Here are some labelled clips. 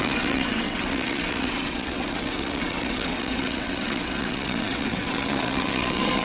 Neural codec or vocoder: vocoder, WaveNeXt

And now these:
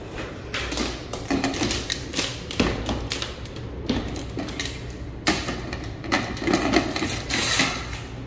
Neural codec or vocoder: none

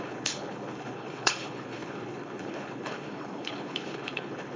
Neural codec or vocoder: codec, HILCodec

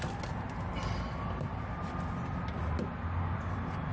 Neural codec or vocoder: none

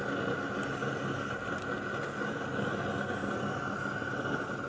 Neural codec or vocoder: none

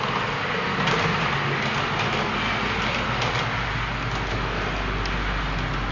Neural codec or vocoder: none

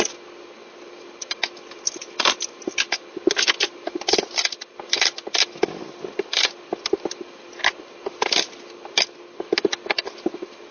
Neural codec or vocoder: none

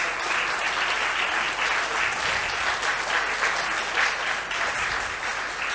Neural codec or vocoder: none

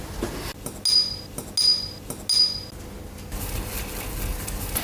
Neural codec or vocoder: none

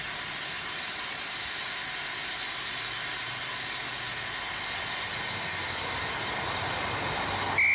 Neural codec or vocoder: none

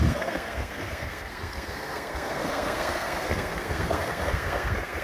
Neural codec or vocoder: codec, SNAC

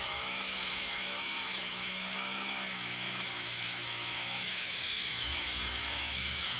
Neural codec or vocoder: autoencoder, DAC-VAE